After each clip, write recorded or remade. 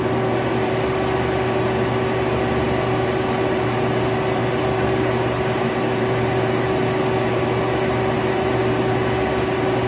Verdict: recorded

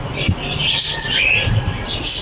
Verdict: recorded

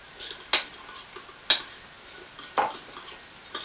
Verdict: recorded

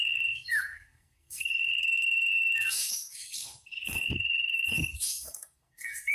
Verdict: remade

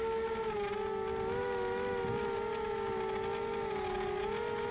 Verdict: recorded